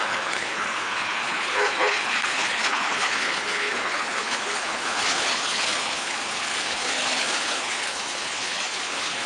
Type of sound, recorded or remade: remade